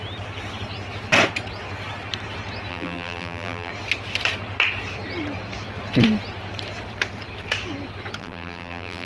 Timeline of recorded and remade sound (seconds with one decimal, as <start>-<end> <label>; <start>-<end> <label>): 0.0-2.7 recorded; 2.7-3.7 remade; 3.7-8.2 recorded; 8.2-9.1 remade